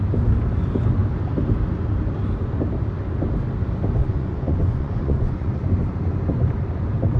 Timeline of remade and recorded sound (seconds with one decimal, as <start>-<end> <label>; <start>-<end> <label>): 0.0-4.0 recorded; 4.0-5.7 remade; 5.7-7.2 recorded